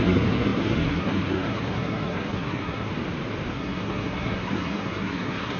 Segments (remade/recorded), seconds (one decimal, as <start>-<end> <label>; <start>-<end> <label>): 0.0-2.9 remade; 2.9-3.5 recorded; 3.5-5.6 remade